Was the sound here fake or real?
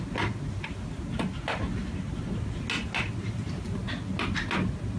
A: real